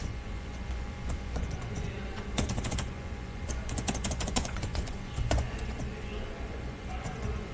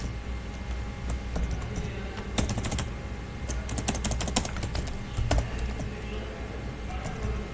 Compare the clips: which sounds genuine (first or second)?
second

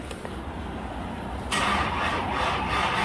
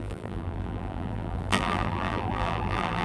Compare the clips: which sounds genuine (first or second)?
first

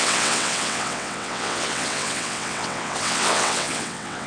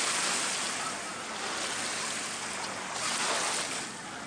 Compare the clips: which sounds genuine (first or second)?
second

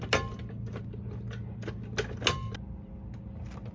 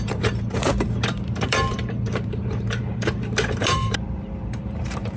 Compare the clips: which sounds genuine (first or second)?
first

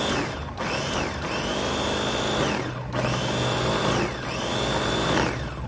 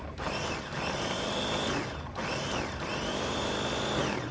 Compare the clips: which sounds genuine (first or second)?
first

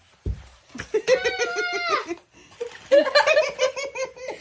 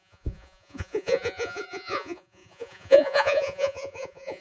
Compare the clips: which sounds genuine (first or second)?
first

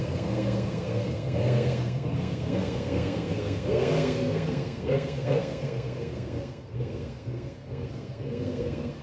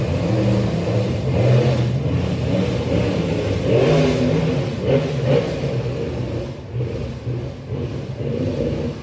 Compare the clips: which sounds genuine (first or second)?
second